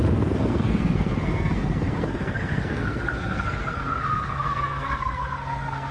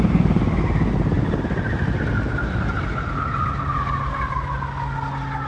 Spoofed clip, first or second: first